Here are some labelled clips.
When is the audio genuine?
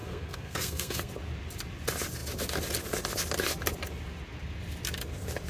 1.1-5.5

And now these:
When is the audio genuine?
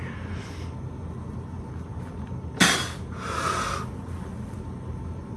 0.0-5.4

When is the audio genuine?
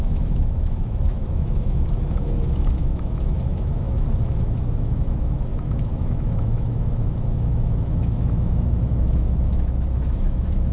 none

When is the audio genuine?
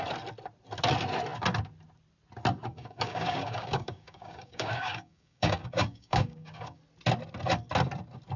0.0-2.7; 6.8-8.4